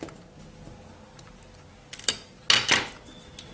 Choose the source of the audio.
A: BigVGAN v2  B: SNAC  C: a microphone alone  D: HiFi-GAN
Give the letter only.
C